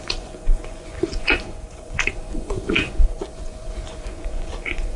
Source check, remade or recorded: remade